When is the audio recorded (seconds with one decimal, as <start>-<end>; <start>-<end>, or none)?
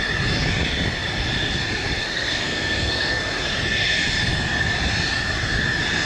0.0-2.0; 3.3-6.1